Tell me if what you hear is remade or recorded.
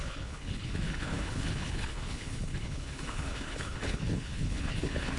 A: remade